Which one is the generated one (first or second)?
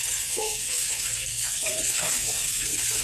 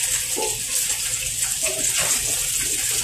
first